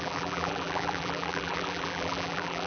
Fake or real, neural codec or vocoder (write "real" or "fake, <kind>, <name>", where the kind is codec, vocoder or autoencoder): fake, vocoder, BigVGAN v2